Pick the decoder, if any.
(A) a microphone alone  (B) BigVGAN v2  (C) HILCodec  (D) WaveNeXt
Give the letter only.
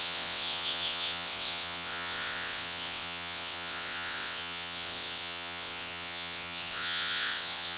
D